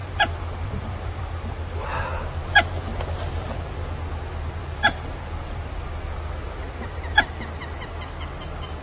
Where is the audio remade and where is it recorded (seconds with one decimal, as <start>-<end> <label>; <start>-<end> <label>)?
0.0-1.9 remade; 1.9-4.6 recorded; 4.6-7.2 remade; 7.2-8.8 recorded